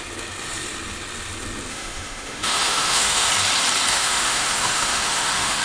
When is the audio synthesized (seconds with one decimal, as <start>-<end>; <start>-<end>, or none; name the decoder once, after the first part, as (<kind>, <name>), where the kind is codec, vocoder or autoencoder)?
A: 1.7-3.3 (autoencoder, DAC-VAE); 3.9-5.6